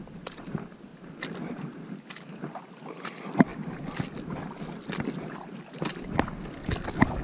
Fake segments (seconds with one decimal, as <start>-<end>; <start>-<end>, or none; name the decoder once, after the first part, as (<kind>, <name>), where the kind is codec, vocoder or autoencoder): 0.9-2.1 (vocoder, BigVGAN v2); 3.5-4.5